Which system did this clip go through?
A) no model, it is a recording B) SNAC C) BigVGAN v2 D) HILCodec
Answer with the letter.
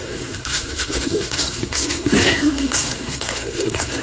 B